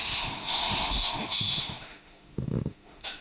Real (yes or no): no